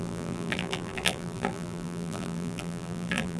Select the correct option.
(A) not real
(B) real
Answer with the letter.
A